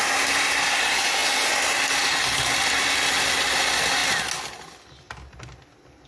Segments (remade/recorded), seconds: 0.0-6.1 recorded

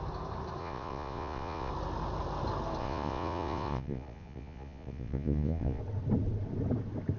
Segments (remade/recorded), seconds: 0.0-0.6 recorded; 0.6-1.7 remade; 1.7-2.8 recorded; 2.8-5.8 remade; 5.8-7.2 recorded

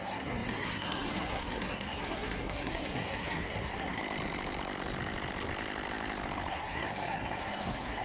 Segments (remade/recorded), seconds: 0.0-4.0 remade; 4.0-6.5 recorded; 6.5-8.0 remade

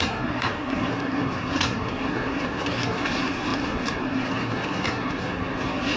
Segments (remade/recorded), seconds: 0.0-6.0 remade

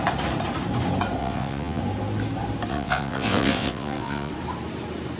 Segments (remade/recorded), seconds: 0.0-1.2 recorded; 1.2-1.8 remade; 1.8-2.7 recorded; 2.7-4.3 remade; 4.3-5.2 recorded

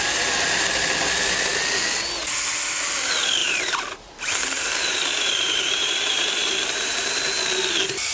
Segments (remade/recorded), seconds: 0.0-3.4 recorded; 3.4-7.2 remade; 7.2-8.1 recorded